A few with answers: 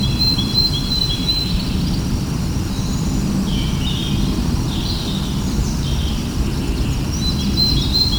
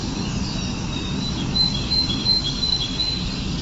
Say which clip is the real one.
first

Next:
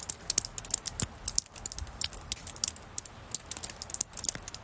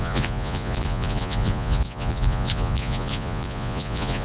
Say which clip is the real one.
first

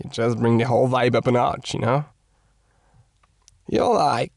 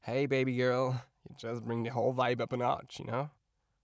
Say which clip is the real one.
first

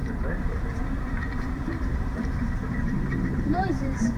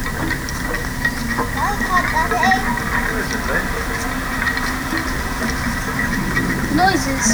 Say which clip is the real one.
second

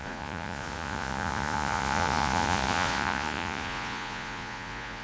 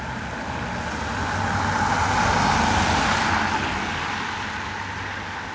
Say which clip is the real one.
second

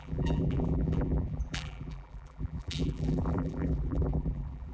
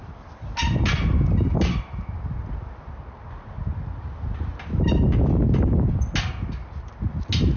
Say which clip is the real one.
second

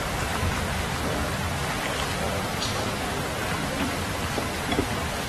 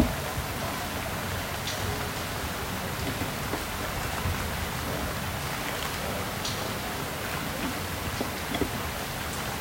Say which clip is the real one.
second